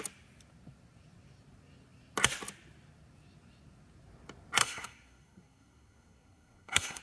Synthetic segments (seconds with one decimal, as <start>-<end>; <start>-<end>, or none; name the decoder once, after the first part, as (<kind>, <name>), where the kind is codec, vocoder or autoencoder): 4.6-7.0 (codec, SNAC)